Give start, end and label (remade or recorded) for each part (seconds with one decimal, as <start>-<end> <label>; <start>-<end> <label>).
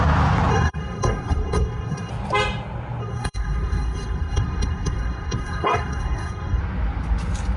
0.0-0.5 recorded; 0.5-2.1 remade; 2.1-3.0 recorded; 3.0-6.6 remade; 6.6-7.6 recorded